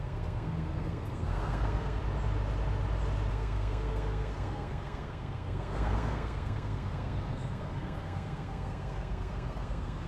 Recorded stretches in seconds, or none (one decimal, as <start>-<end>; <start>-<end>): 2.0-3.3